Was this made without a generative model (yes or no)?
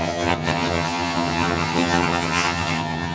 no